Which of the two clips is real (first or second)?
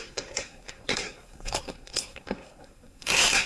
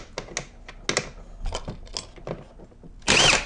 second